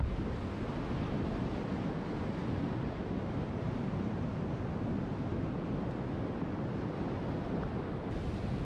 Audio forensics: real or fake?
real